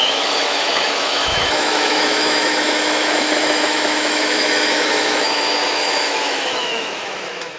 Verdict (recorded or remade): remade